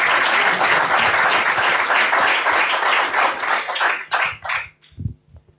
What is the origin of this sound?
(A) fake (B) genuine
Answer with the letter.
B